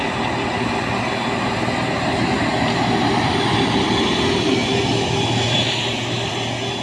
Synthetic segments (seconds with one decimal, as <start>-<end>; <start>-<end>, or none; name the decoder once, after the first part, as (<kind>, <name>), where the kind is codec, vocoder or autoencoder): none